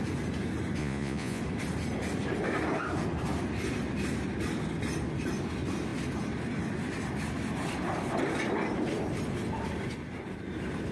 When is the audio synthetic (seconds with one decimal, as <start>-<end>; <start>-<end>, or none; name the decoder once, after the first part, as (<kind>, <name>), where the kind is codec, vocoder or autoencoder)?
0.8-1.4 (vocoder, Vocos)

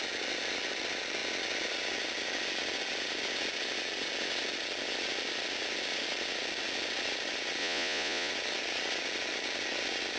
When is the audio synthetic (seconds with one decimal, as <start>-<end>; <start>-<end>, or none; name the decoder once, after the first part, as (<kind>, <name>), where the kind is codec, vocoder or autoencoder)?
7.6-8.3 (vocoder, Vocos)

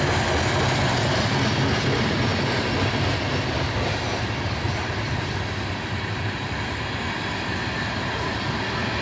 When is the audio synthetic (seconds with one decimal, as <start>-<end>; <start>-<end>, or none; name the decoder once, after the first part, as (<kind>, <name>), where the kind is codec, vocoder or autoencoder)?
none

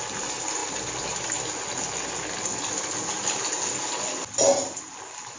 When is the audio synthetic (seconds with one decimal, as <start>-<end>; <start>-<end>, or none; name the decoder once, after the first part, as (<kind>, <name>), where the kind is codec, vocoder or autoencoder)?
none

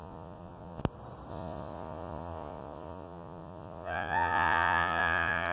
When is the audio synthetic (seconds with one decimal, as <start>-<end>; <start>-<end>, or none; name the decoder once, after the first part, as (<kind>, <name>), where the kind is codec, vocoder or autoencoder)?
0.0-0.8 (vocoder, Vocos); 1.3-5.5

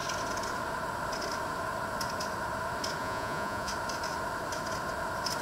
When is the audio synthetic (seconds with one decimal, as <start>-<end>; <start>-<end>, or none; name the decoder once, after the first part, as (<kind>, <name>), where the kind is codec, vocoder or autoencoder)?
3.0-3.7 (vocoder, Vocos)